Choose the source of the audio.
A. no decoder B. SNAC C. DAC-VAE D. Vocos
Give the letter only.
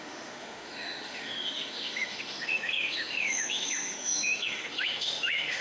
C